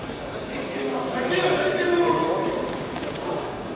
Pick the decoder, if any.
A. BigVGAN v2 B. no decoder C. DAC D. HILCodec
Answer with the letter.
C